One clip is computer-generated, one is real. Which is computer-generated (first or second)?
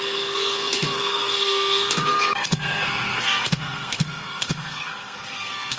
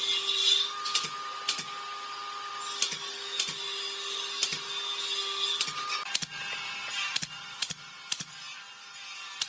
first